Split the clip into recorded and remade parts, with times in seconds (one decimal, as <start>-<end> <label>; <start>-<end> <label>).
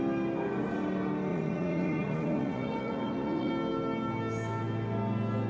0.0-1.3 recorded; 1.3-3.5 remade; 3.5-5.5 recorded